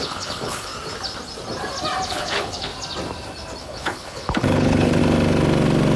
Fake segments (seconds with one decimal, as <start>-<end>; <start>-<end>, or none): 0.0-0.7; 2.1-2.7; 3.6-5.0